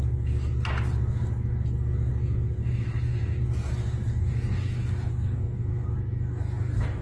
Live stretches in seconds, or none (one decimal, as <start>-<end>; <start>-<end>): 0.0-7.0